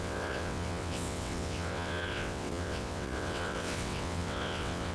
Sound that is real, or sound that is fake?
fake